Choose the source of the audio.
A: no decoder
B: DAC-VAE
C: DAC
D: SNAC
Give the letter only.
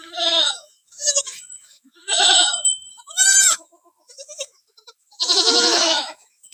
B